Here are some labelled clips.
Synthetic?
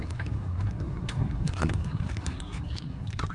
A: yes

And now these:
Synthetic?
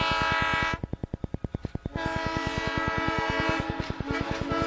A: no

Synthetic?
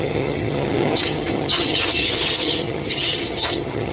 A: yes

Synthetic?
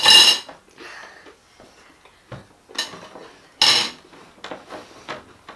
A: no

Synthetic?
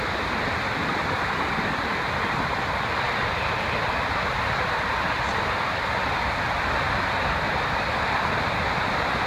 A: no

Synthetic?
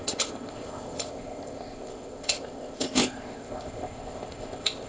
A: yes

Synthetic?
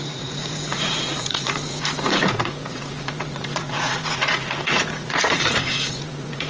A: yes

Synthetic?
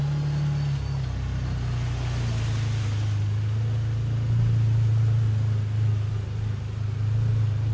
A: no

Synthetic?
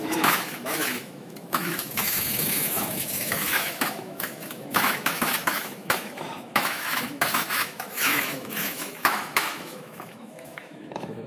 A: yes